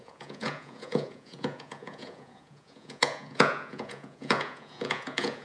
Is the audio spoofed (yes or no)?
yes